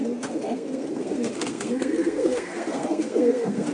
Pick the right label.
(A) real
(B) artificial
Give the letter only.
B